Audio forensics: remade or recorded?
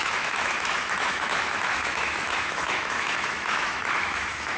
remade